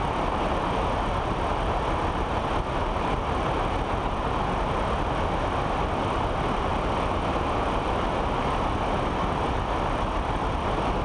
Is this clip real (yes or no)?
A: yes